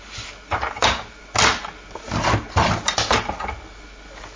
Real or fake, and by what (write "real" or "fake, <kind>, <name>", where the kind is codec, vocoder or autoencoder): real